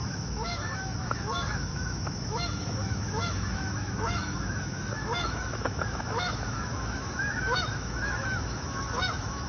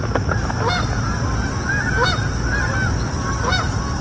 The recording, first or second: second